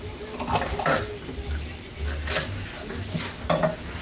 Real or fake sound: real